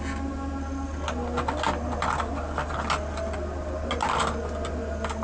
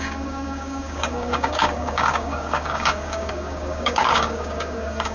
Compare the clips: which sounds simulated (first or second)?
second